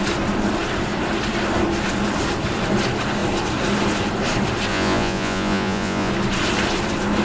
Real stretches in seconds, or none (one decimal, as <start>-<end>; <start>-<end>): 0.0-4.7; 6.1-7.2